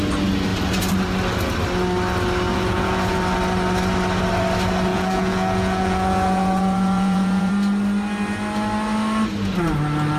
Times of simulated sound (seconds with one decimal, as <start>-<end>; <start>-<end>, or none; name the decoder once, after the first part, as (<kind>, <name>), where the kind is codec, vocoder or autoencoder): 2.5-3.2 (vocoder, Vocos); 4.9-7.5